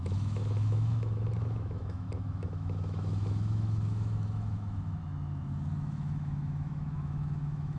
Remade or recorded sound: remade